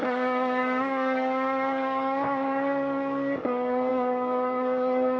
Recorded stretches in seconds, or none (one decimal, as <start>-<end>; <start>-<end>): none